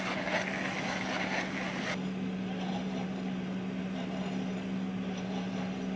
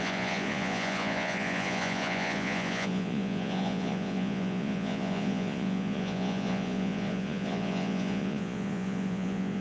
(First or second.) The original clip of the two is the first